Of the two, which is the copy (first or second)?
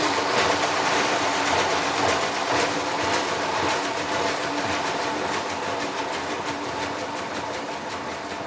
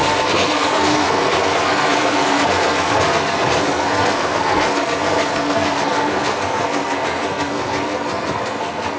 second